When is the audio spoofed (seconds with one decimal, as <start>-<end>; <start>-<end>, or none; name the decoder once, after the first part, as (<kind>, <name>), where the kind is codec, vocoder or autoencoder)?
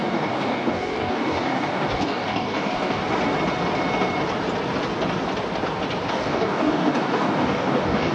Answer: 0.0-3.0 (codec, DAC); 6.1-8.1